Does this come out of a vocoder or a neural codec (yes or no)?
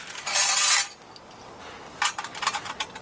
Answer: no